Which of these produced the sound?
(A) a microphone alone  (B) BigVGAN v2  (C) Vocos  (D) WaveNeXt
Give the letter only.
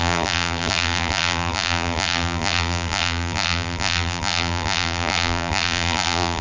B